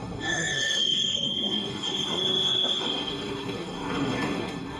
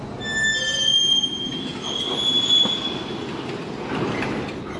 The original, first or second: second